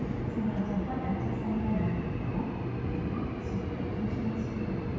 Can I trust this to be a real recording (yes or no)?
yes